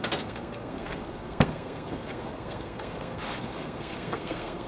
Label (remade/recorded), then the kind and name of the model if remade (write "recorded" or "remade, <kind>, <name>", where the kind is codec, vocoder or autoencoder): remade, codec, SNAC